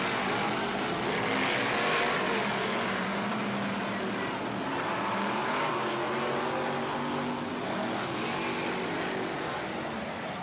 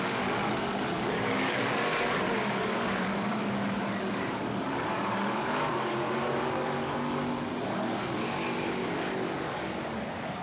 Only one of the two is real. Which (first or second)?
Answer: first